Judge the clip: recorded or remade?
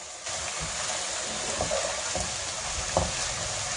recorded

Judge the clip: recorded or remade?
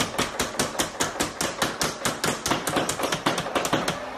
recorded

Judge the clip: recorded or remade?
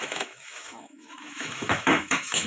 remade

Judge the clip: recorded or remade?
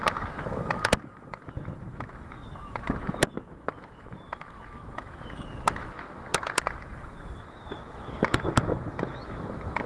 remade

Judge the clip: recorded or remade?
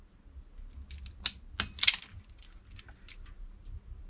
recorded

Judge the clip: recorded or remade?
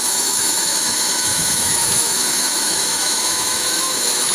remade